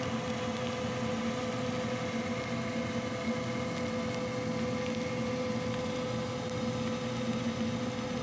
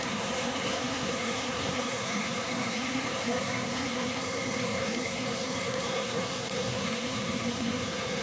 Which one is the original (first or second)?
first